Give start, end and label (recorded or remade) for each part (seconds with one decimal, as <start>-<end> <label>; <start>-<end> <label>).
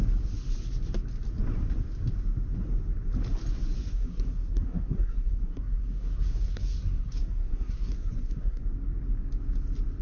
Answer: 0.0-3.8 recorded; 3.8-8.6 remade; 8.6-10.0 recorded